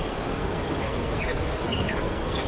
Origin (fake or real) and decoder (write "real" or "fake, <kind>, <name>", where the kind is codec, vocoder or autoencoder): fake, codec, SNAC